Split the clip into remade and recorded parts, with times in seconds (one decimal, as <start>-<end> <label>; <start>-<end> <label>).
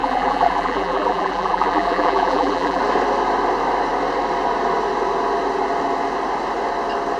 0.0-2.8 remade; 2.8-7.2 recorded